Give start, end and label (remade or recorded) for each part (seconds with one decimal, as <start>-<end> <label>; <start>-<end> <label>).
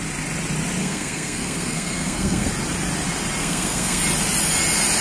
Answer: 0.0-0.8 recorded; 0.8-2.5 remade; 2.5-3.4 recorded; 3.4-4.0 remade; 4.0-5.0 recorded